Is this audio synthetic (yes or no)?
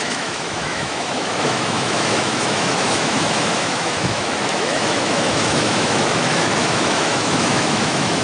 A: yes